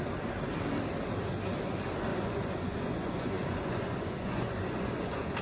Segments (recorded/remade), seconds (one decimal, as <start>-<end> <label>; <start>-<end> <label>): 0.0-2.1 recorded; 2.1-5.4 remade